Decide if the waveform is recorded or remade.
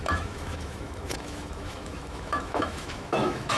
remade